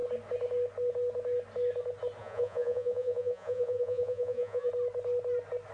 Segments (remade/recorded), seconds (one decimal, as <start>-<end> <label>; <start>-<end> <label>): 0.0-2.2 recorded; 2.2-4.7 remade; 4.7-5.7 recorded

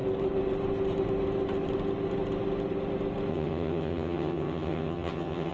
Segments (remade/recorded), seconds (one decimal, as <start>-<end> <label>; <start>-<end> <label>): 0.0-3.3 recorded; 3.3-5.5 remade

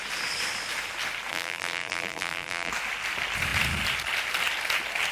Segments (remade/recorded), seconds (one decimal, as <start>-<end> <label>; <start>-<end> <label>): 0.0-1.3 recorded; 1.3-2.7 remade; 2.7-5.1 recorded